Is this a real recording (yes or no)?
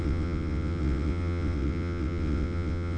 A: no